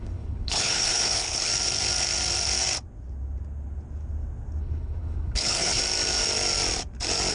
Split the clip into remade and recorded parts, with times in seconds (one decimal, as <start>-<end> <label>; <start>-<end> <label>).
0.0-1.5 remade; 1.5-4.6 recorded; 4.6-5.8 remade; 5.8-7.3 recorded